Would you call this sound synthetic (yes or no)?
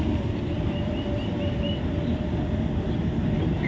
no